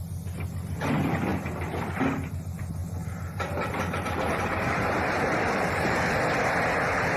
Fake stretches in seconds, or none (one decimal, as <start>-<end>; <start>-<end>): 1.3-2.4; 2.8-6.1